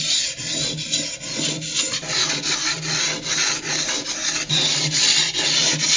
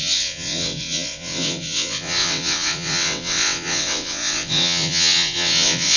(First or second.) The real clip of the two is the first